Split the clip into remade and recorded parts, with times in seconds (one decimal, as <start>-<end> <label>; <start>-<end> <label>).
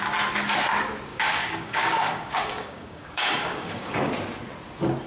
0.0-1.1 recorded; 1.1-4.1 remade; 4.1-5.1 recorded